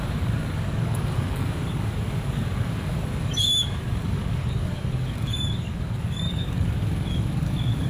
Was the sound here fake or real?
fake